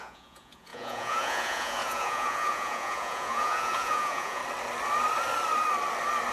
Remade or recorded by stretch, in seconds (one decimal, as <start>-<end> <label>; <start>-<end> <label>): 0.0-4.4 remade; 4.4-6.3 recorded